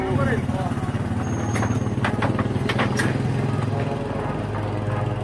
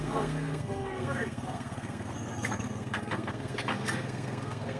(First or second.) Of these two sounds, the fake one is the second